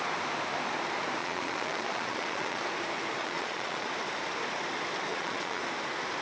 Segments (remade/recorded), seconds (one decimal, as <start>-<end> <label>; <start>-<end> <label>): 0.0-1.2 recorded; 1.2-2.6 remade; 2.6-3.2 recorded; 3.2-3.9 remade; 3.9-5.1 recorded; 5.1-5.6 remade; 5.6-6.2 recorded